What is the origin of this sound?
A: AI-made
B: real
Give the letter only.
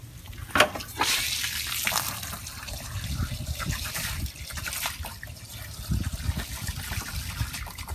B